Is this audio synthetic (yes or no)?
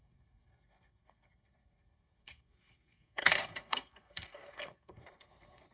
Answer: yes